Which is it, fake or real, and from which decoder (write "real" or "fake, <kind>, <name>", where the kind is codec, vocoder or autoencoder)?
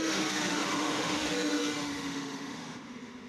fake, autoencoder, DAC-VAE